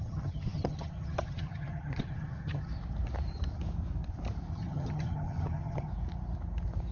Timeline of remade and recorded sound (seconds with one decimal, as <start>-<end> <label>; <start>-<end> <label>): 0.0-2.7 remade; 2.7-4.5 recorded; 4.5-5.9 remade; 5.9-6.9 recorded